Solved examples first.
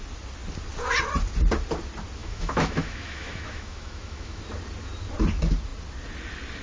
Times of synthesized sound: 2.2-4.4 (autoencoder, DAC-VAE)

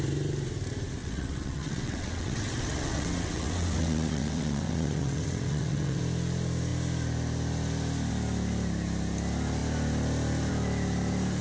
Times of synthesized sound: 1.0-6.0 (vocoder, WaveNeXt)

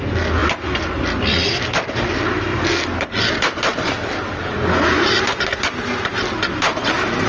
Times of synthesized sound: none

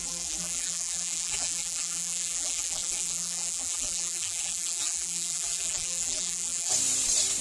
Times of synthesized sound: 0.0-6.7 (vocoder, BigVGAN v2)

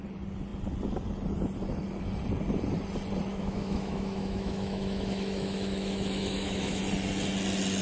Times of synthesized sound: 3.3-6.8 (autoencoder, DAC-VAE)

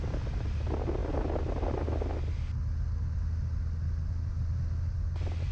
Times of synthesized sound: none